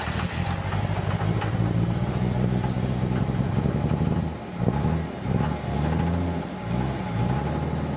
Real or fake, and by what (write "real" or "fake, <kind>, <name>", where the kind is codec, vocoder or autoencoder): real